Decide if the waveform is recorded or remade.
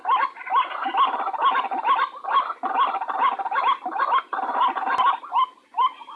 recorded